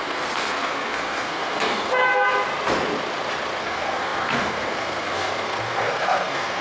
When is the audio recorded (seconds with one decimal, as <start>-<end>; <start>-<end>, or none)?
2.1-3.6